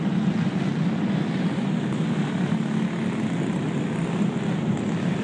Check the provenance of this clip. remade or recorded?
recorded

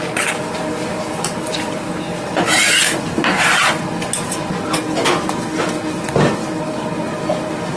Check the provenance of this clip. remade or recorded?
recorded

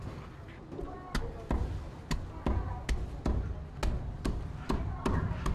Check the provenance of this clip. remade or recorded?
recorded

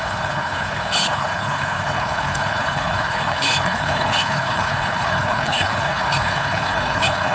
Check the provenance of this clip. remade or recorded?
remade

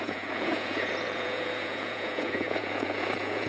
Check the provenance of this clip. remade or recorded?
remade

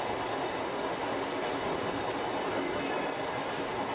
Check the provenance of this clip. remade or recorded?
recorded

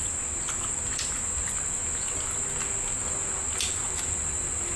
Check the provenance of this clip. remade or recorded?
recorded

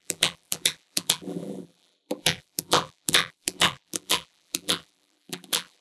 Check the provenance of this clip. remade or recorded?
remade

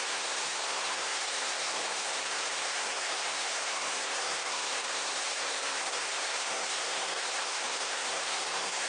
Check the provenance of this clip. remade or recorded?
remade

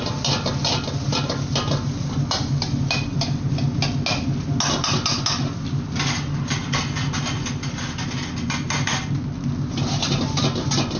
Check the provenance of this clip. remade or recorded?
recorded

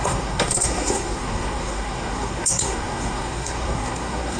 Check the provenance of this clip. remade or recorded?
remade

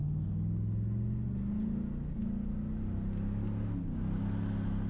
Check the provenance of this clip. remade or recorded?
recorded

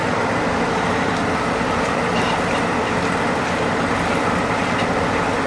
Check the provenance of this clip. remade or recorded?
recorded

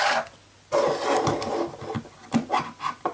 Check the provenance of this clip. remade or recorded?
recorded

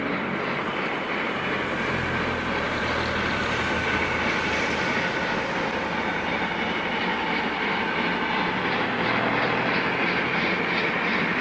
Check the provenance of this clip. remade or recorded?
recorded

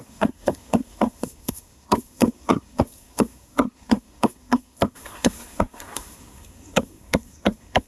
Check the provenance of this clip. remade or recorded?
remade